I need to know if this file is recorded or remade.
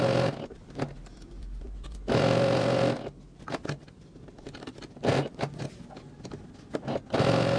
recorded